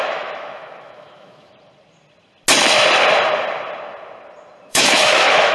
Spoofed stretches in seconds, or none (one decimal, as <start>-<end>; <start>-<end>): 0.0-1.5; 4.7-5.5